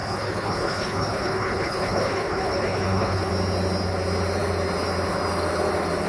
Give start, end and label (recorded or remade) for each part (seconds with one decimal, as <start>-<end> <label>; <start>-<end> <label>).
0.0-3.3 remade; 3.3-6.1 recorded